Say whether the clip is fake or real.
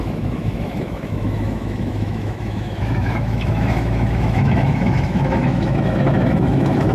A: fake